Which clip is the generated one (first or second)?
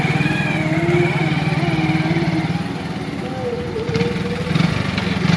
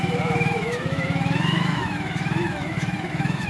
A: second